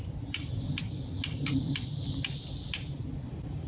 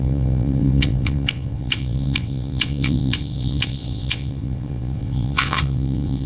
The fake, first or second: second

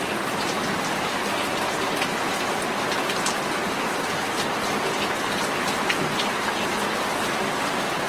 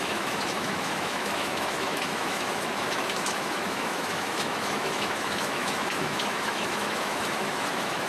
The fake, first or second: second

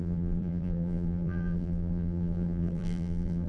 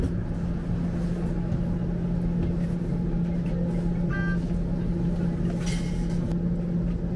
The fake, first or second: first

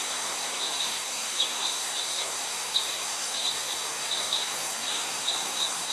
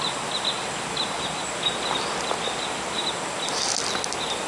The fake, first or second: first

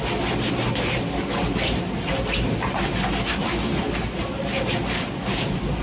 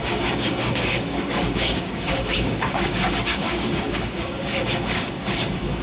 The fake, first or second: second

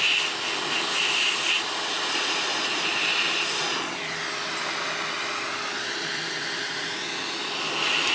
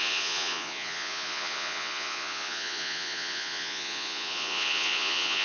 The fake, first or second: second